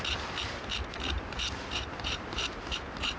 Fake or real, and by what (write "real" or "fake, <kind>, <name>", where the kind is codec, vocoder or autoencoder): real